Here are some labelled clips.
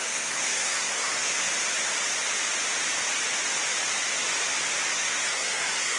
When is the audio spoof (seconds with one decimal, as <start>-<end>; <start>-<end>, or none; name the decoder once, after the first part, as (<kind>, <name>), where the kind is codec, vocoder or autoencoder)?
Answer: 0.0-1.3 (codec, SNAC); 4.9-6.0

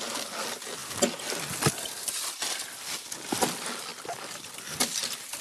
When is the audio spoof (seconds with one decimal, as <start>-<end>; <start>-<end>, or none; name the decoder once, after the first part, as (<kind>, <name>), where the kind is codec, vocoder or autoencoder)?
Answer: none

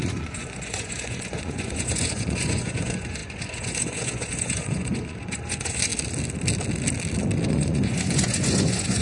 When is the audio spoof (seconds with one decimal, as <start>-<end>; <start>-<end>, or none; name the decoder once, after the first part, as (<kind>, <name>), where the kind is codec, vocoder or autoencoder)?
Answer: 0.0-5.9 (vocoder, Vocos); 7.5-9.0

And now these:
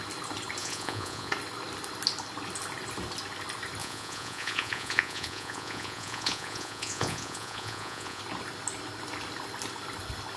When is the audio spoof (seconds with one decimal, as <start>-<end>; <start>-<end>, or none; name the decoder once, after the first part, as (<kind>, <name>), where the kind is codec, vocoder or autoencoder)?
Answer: 0.6-1.3 (vocoder, Vocos); 3.8-8.2

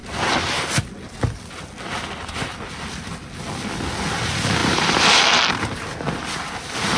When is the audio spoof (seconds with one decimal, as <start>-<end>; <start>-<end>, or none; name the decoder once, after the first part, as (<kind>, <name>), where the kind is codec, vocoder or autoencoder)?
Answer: 4.6-5.5 (vocoder, BigVGAN v2)

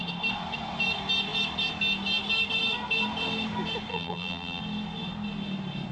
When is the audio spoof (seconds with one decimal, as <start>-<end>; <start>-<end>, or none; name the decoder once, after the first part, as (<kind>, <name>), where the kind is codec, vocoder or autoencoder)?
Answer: 3.9-4.6 (vocoder, BigVGAN v2)

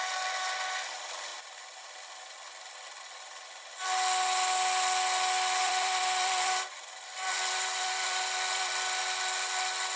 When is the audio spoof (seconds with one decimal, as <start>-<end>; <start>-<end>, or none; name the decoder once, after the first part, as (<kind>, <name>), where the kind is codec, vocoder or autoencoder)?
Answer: 1.3-1.8 (vocoder, BigVGAN v2); 5.6-9.0

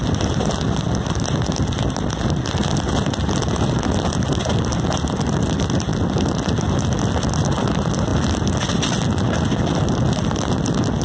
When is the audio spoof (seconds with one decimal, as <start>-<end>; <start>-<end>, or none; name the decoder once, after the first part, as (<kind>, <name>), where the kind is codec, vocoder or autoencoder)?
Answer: none